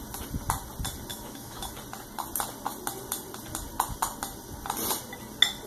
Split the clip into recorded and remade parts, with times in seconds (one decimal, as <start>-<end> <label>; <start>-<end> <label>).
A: 0.0-1.1 recorded; 1.1-1.7 remade; 1.7-5.7 recorded